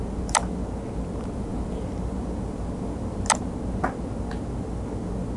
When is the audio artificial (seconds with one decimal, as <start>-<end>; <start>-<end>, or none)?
none